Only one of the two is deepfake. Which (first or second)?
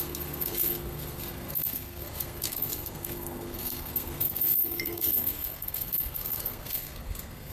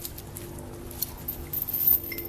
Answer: first